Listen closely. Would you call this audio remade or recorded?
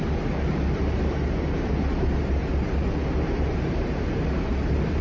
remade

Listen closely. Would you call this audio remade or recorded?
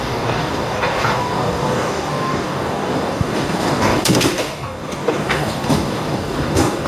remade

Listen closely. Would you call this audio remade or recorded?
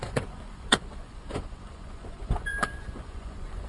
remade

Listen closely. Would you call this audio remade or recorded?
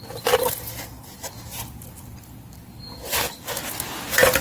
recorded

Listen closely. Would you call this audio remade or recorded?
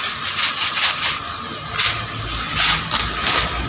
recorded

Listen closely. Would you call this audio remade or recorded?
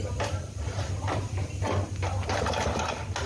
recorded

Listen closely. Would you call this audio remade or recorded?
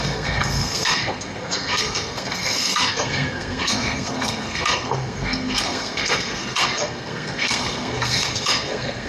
remade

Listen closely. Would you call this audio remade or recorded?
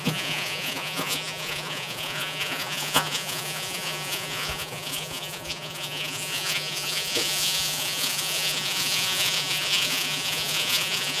remade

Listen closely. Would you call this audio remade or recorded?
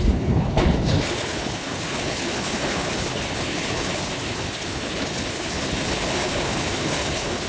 remade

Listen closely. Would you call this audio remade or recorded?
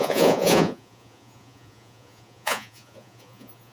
remade